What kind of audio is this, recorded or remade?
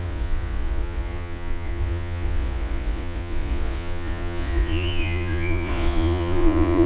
remade